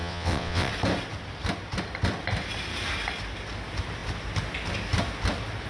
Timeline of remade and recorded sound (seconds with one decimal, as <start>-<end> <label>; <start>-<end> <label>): 0.0-0.7 remade; 0.7-5.7 recorded

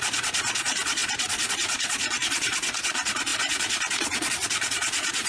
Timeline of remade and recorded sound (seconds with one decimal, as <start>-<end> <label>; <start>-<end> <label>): 0.0-5.3 remade

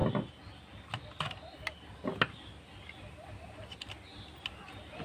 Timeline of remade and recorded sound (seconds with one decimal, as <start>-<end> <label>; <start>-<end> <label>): 0.0-5.0 recorded

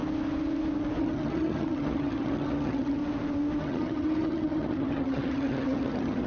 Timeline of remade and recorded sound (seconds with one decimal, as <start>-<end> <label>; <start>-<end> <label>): 0.0-1.0 recorded; 1.0-3.0 remade; 3.0-3.6 recorded; 3.6-6.3 remade

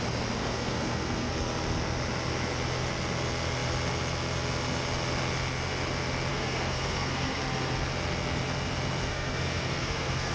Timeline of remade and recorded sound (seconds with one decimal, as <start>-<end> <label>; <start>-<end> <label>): 0.0-0.4 recorded; 0.4-1.3 remade; 1.3-6.3 recorded; 6.3-7.4 remade; 7.4-9.1 recorded; 9.1-10.3 remade

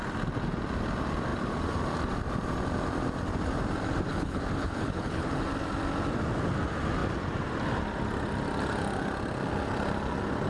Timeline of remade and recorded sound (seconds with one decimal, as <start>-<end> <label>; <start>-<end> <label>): 0.0-4.1 recorded; 4.1-5.3 remade; 5.3-10.5 recorded

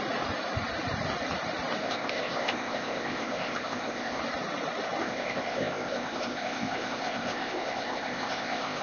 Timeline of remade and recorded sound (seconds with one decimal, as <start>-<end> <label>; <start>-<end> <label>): 0.0-1.8 recorded; 1.8-4.2 remade; 4.2-5.0 recorded; 5.0-8.8 remade

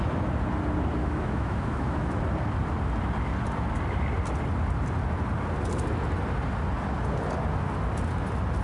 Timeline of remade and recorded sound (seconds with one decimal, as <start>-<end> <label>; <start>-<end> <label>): 0.0-1.0 recorded; 1.0-2.2 remade; 2.2-8.6 recorded